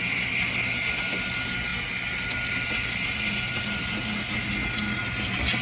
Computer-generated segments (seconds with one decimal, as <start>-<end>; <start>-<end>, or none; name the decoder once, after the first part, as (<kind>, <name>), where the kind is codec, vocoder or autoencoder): none